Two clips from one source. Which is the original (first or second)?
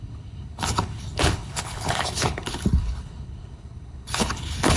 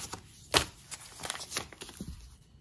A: second